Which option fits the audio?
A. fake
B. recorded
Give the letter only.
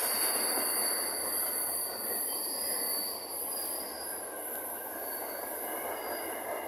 B